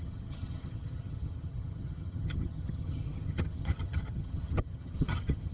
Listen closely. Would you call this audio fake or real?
fake